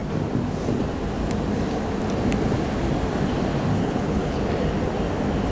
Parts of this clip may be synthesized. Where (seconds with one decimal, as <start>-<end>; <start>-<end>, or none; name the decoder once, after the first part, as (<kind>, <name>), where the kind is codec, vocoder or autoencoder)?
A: 3.8-4.4 (codec, HILCodec)